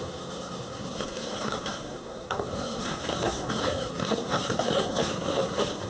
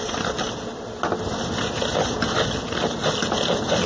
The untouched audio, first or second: second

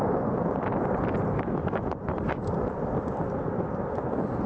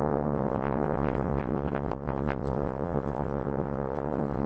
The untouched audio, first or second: first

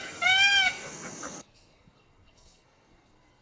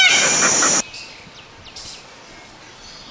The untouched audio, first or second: second